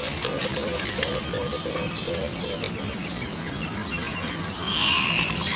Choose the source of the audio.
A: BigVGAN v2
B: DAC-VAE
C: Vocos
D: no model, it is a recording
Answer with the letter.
A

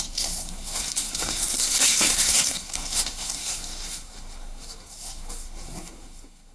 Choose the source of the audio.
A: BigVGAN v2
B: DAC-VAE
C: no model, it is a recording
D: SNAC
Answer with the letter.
D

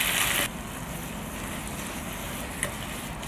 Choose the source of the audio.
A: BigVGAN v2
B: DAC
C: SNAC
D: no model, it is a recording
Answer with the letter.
D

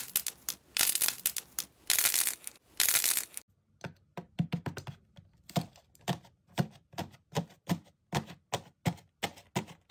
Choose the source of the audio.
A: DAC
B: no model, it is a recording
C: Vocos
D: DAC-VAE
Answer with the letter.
B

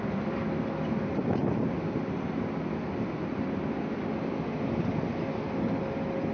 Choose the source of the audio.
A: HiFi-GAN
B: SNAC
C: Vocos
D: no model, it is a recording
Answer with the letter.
D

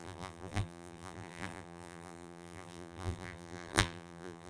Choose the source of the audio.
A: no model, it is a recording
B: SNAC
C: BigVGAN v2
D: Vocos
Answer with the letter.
C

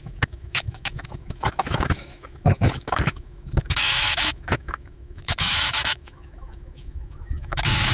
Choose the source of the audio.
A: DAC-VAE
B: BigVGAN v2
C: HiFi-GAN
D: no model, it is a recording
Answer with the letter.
A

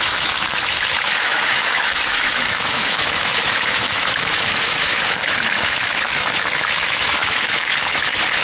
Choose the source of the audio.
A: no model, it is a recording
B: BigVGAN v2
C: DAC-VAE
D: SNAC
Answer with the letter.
C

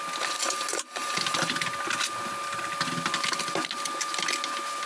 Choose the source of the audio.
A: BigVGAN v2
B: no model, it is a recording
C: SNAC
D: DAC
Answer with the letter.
B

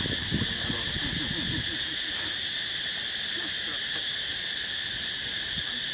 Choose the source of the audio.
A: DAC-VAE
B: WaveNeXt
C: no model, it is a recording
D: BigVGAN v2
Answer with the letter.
C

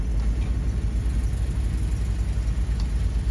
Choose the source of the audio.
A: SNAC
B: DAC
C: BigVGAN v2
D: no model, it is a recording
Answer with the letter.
D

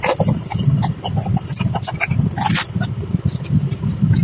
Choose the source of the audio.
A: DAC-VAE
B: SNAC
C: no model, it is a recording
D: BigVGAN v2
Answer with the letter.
C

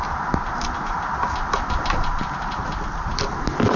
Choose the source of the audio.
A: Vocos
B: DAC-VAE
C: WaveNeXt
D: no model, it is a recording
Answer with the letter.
D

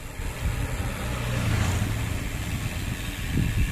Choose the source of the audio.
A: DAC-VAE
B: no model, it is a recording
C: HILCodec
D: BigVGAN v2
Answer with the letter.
B